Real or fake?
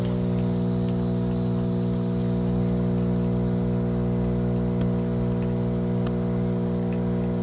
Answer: real